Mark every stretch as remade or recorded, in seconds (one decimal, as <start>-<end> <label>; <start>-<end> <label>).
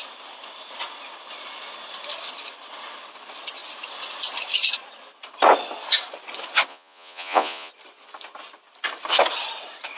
0.0-6.7 recorded; 6.7-7.7 remade; 7.7-10.0 recorded